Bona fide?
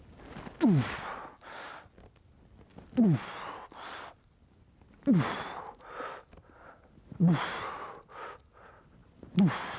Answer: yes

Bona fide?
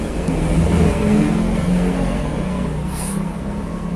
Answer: no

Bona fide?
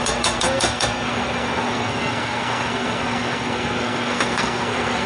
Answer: no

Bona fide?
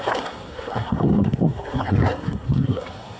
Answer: no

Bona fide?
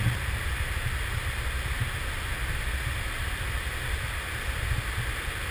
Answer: yes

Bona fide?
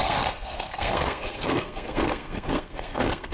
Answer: no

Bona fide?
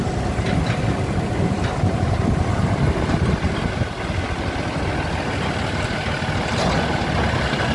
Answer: yes